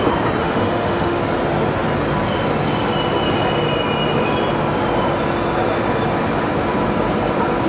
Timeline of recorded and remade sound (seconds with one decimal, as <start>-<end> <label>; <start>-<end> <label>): 0.0-0.4 recorded; 0.4-1.2 remade; 1.2-7.7 recorded

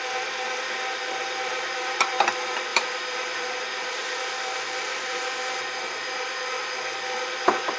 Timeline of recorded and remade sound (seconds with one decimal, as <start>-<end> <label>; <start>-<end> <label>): 0.0-1.2 recorded; 1.2-2.0 remade; 2.0-2.7 recorded; 2.7-4.2 remade; 4.2-4.9 recorded; 4.9-6.4 remade; 6.4-7.8 recorded

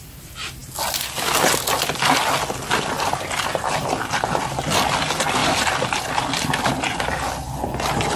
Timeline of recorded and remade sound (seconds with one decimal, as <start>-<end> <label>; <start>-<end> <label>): 0.0-5.4 recorded; 5.4-7.0 remade; 7.0-8.2 recorded

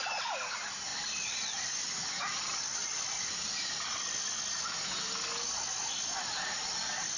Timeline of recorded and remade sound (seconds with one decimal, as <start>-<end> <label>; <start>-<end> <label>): 0.0-0.9 recorded; 0.9-3.9 remade; 3.9-7.2 recorded

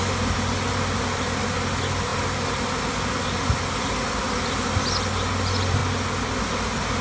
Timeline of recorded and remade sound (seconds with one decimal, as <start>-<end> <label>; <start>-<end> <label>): 0.0-7.0 recorded

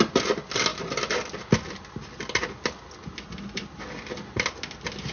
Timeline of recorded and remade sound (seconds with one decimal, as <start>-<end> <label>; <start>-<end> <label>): 0.0-5.1 recorded

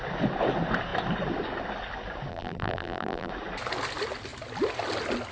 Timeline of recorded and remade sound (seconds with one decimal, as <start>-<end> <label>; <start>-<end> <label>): 0.0-2.3 recorded; 2.3-3.3 remade; 3.3-5.3 recorded

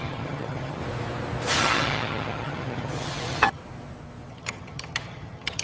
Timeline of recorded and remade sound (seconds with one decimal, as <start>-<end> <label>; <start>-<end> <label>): 0.0-0.8 remade; 0.8-1.6 recorded; 1.6-3.6 remade; 3.6-4.3 recorded; 4.3-5.6 remade